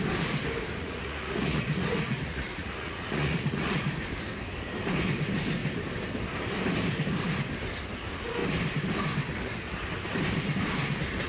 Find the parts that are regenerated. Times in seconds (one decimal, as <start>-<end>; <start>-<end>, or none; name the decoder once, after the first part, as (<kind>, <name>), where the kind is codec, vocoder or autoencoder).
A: 0.8-3.8 (vocoder, Vocos)

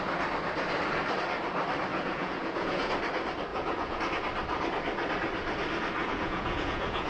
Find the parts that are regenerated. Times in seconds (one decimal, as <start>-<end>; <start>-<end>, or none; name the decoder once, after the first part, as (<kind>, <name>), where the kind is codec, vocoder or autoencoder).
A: 1.9-2.9 (vocoder, Vocos); 3.5-4.0; 6.0-7.1

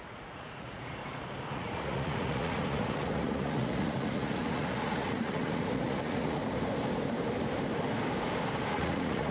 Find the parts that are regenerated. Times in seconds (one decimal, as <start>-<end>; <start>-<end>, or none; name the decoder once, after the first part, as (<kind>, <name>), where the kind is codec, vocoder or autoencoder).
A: 0.0-1.0 (vocoder, Vocos); 1.5-6.4; 8.7-9.3

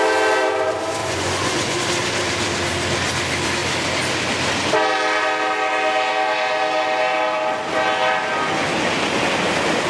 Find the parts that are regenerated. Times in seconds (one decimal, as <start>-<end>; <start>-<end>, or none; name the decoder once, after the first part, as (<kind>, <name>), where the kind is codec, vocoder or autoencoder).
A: 1.0-1.8 (vocoder, Vocos)

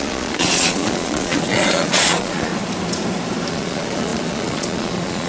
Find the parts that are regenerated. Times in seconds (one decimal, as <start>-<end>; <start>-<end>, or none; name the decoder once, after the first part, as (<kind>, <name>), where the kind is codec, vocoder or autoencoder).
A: 0.0-2.5 (vocoder, Vocos); 3.5-5.3

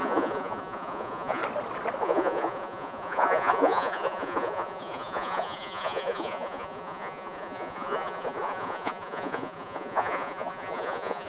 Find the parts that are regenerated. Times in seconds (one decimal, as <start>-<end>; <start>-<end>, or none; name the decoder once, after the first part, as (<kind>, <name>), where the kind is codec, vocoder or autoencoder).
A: 0.0-1.4 (vocoder, Vocos); 2.0-11.3

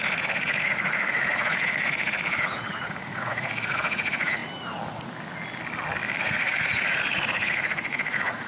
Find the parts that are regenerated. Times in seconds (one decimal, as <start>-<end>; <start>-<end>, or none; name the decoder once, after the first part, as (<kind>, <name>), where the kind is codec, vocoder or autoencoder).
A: 0.0-4.4 (vocoder, Vocos); 6.2-8.5

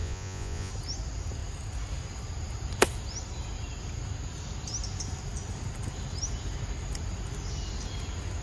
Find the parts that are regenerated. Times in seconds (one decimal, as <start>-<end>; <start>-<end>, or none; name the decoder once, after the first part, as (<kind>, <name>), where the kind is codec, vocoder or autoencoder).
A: 0.0-0.7 (vocoder, Vocos)